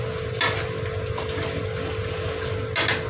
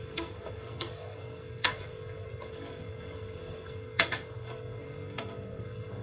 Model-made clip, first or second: second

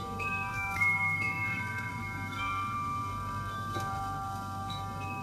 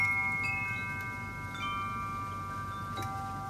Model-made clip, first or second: first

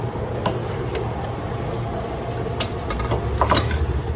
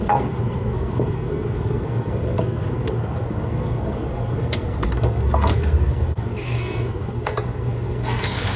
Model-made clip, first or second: second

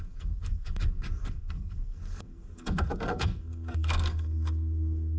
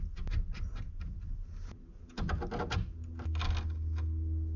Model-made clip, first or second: first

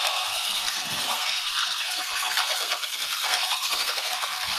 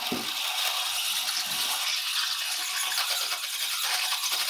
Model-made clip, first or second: first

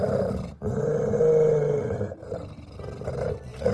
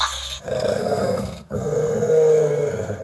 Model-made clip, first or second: second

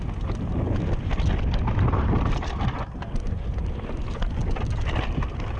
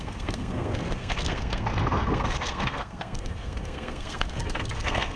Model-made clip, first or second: second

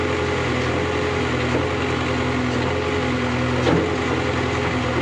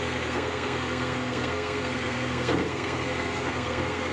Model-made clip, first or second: second